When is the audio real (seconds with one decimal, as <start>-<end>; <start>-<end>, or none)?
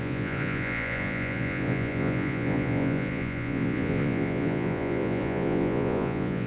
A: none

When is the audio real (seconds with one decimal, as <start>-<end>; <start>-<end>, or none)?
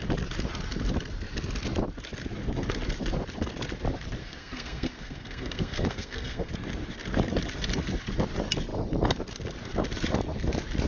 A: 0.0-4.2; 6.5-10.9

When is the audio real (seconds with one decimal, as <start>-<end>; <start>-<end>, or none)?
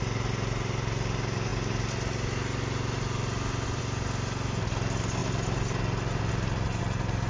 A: 0.0-7.3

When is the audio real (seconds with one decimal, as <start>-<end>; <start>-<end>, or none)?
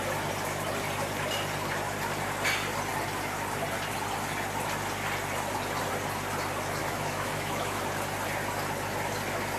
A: 0.0-6.8; 7.8-9.6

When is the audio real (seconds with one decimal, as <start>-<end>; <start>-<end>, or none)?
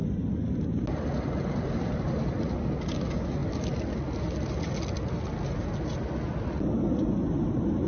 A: 0.0-7.9